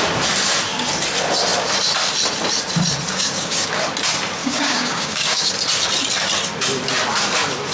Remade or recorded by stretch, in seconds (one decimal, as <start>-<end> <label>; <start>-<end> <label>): 0.0-3.1 recorded; 3.1-3.7 remade; 3.7-4.4 recorded; 4.4-5.5 remade; 5.5-7.7 recorded